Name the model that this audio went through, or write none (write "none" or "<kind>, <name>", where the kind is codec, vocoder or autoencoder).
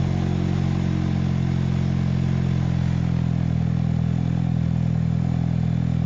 none